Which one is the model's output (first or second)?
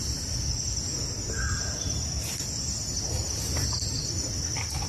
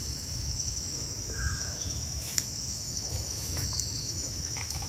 second